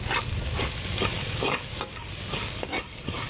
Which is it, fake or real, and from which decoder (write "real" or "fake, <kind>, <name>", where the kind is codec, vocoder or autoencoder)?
real